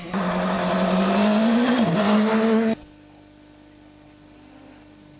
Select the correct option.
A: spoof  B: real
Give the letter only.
B